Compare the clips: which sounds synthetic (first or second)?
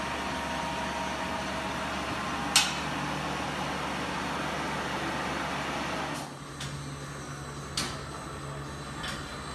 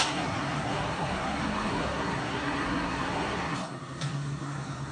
second